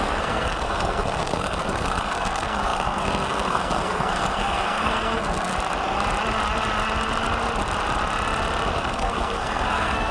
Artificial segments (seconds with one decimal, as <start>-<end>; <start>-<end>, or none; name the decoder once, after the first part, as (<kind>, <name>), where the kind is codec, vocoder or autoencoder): 0.0-5.5 (codec, SNAC); 8.8-10.1